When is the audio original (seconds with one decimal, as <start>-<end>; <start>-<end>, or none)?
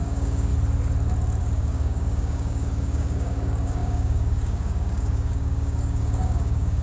0.5-1.4